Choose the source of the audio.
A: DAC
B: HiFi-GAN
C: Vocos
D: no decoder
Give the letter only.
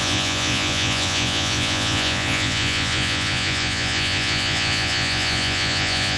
C